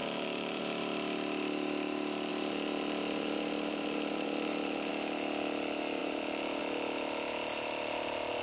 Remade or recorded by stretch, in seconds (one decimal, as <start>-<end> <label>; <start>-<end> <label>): 0.0-0.6 remade; 0.6-2.3 recorded; 2.3-4.9 remade; 4.9-6.0 recorded; 6.0-6.6 remade; 6.6-8.4 recorded